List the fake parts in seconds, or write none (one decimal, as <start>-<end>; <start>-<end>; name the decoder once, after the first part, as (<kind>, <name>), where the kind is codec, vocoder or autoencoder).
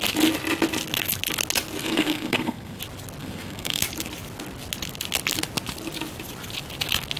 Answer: 1.8-2.8 (codec, SNAC); 3.2-3.8